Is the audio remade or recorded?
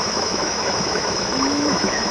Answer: remade